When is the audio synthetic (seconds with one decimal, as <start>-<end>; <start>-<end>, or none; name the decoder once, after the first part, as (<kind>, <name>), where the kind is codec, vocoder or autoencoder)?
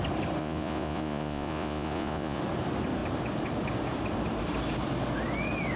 0.4-2.4 (vocoder, Vocos)